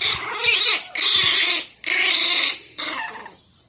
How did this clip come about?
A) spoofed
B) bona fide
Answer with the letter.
B